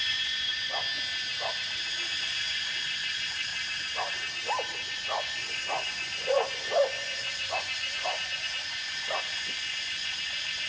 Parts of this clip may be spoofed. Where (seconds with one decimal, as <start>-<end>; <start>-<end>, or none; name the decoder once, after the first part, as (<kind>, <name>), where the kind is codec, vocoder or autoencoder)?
0.0-0.7 (vocoder, Vocos); 2.2-3.5; 4.9-10.7